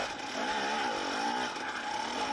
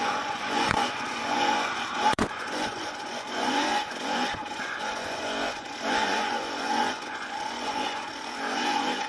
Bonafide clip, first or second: first